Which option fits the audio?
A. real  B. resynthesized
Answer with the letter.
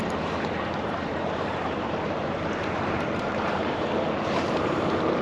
B